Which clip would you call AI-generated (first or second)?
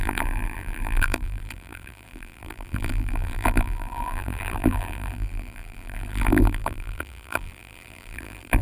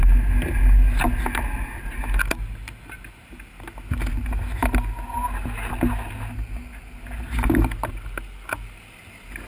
first